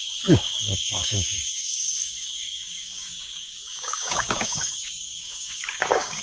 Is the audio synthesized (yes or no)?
yes